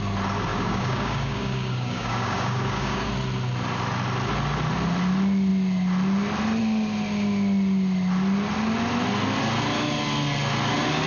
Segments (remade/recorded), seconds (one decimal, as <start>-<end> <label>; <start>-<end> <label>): 0.0-0.5 recorded; 0.5-3.1 remade; 3.1-11.1 recorded